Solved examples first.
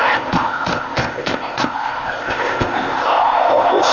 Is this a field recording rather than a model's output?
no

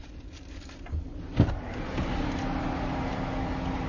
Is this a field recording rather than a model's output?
yes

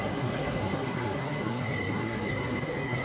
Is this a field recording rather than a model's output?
no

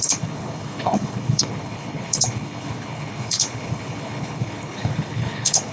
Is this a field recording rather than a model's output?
no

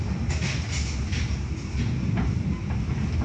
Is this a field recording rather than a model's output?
yes